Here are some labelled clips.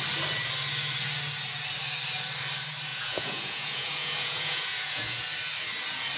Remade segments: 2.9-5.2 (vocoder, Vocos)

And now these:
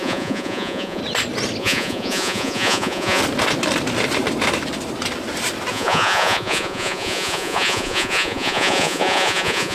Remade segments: 0.0-1.0 (vocoder, Vocos); 1.6-3.2; 5.7-9.7

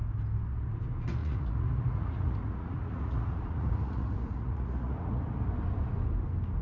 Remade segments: 1.2-5.2 (vocoder, Vocos)

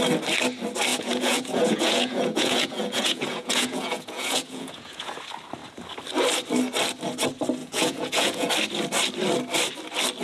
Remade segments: 0.9-5.1 (vocoder, Vocos); 7.6-8.5